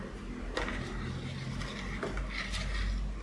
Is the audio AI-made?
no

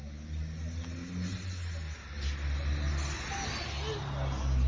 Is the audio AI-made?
no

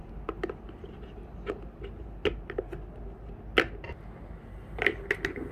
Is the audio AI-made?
no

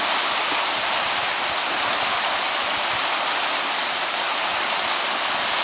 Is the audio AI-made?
no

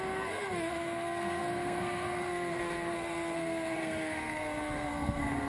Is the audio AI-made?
yes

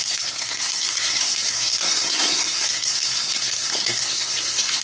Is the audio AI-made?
yes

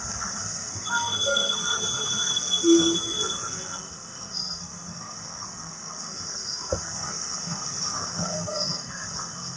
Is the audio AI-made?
yes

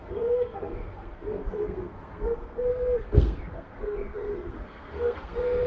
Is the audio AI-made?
yes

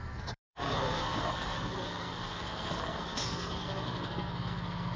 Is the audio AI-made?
yes